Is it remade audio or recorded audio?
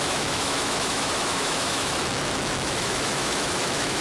remade